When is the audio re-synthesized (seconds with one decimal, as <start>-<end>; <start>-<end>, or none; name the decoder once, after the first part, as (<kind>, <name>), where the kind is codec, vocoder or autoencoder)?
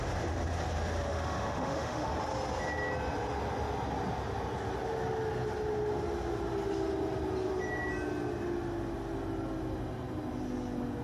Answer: 1.1-2.1 (autoencoder, DAC-VAE)